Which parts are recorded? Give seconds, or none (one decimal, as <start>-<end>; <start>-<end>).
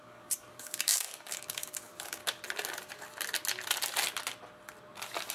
2.2-5.3